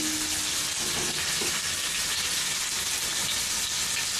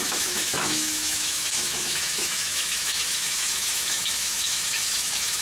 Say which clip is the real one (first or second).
first